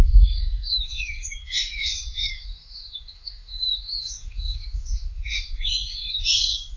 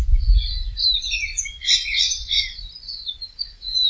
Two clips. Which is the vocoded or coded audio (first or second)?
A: first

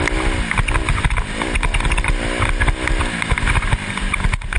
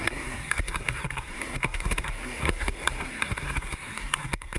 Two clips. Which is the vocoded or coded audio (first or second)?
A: second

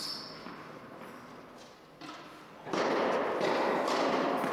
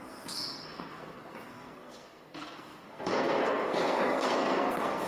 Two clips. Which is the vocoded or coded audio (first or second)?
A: second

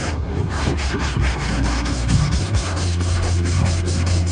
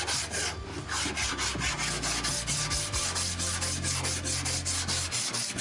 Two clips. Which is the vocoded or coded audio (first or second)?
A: first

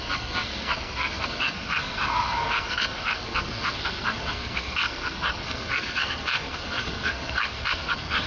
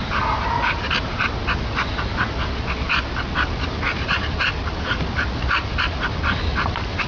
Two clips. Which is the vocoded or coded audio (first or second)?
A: first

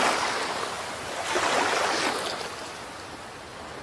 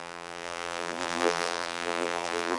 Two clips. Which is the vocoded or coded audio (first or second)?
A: second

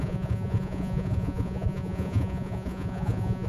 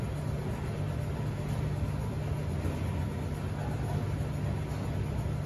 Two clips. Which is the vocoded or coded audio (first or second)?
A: first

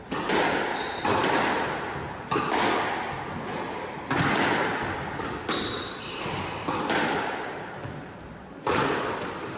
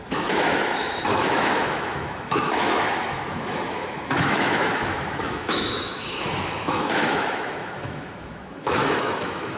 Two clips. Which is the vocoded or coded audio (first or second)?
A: second